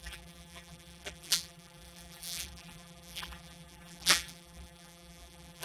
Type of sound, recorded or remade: remade